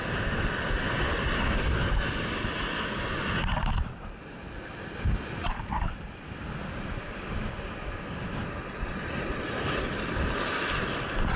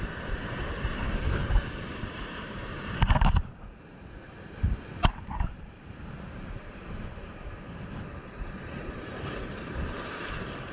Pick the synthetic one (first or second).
second